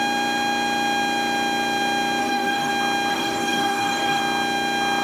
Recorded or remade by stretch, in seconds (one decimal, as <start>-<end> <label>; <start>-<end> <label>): 0.0-2.2 recorded; 2.2-2.7 remade; 2.7-3.1 recorded; 3.1-4.2 remade; 4.2-5.0 recorded